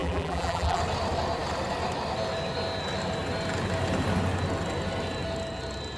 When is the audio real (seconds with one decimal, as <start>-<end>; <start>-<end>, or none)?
0.8-6.0